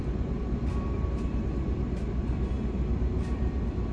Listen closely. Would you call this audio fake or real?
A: real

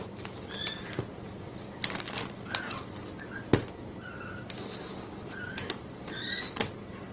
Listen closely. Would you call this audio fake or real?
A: real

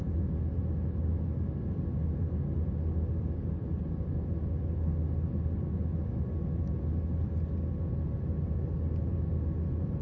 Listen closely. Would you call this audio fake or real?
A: real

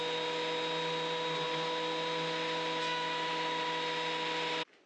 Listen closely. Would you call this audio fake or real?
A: real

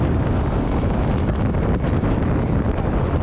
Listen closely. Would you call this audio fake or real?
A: real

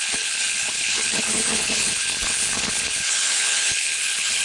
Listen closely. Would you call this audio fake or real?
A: fake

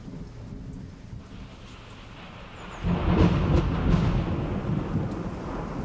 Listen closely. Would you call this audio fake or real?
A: real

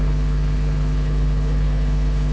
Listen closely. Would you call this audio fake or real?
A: fake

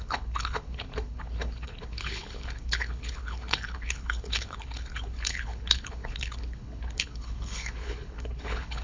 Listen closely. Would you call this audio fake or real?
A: fake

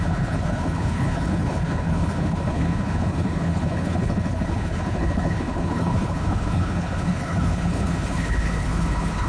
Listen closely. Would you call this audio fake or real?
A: fake